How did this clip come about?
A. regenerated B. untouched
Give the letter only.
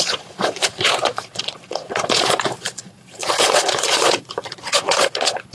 A